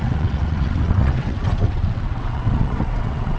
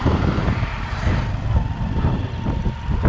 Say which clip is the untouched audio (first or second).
second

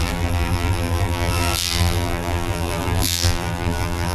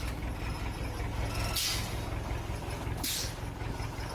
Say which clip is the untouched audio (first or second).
second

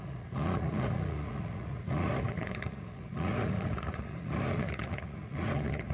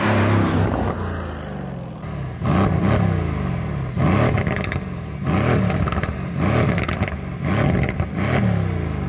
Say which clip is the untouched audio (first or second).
second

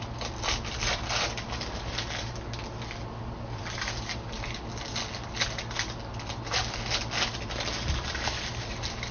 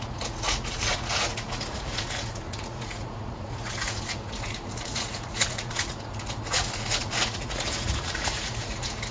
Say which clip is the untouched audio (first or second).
first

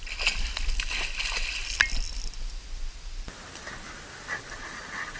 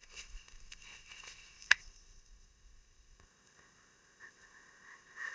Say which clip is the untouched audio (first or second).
first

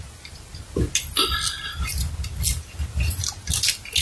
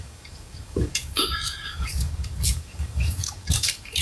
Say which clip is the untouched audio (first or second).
first